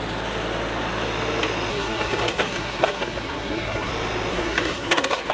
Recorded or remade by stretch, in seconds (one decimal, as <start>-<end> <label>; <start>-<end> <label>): 0.0-1.7 recorded; 1.7-3.9 remade; 3.9-4.3 recorded; 4.3-5.3 remade